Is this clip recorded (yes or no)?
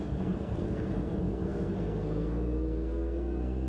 no